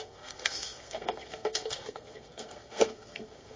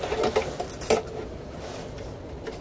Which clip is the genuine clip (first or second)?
second